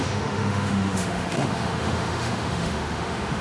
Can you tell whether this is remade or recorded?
remade